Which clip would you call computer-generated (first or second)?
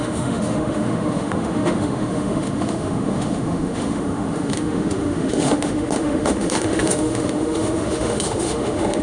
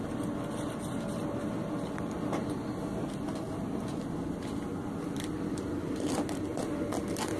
first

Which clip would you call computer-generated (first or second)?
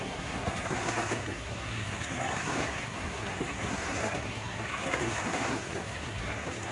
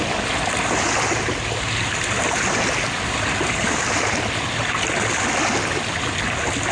first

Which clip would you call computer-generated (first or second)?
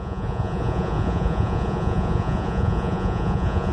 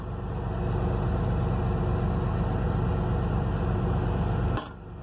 first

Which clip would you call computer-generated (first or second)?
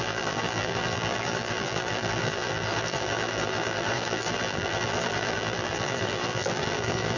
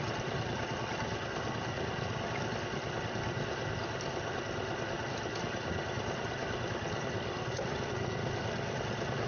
first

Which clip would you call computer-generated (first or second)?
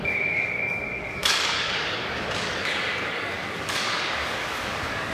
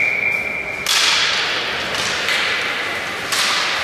first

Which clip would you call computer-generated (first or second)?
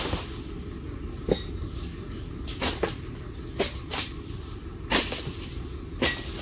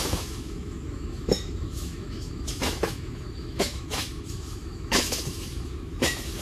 second